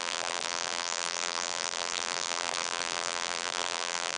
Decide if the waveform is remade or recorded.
remade